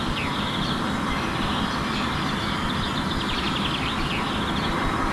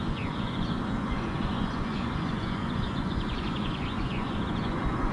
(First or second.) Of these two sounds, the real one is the first